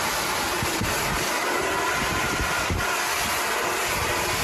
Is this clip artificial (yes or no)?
no